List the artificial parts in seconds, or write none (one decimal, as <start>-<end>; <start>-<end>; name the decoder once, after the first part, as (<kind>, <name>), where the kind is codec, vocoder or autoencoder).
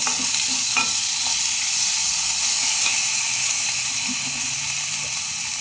2.5-4.7 (autoencoder, DAC-VAE)